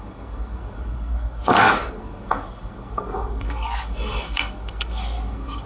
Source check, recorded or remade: remade